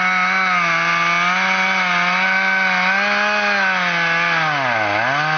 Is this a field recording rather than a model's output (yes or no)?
yes